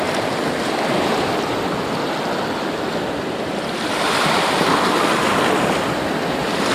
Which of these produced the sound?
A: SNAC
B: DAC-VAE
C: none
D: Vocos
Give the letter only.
C